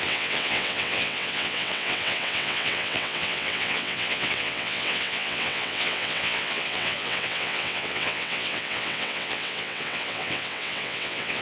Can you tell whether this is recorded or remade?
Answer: remade